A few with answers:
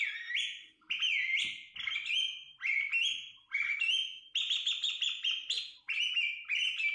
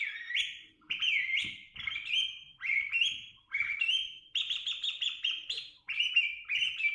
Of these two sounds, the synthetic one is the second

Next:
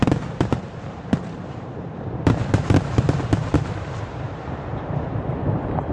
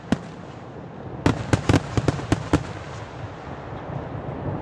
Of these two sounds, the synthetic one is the first